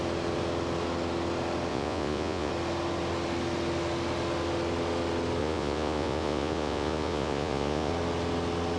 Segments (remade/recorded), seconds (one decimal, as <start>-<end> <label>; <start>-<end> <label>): 0.0-1.7 recorded; 1.7-2.5 remade; 2.5-5.4 recorded; 5.4-7.9 remade; 7.9-8.8 recorded